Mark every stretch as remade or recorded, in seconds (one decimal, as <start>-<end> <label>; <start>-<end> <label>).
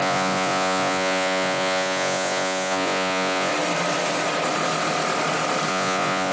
0.0-3.5 remade; 3.5-5.7 recorded; 5.7-6.3 remade